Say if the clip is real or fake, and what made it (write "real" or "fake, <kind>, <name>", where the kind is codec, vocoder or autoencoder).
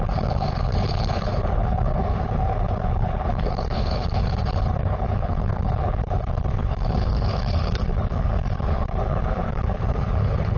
fake, codec, HILCodec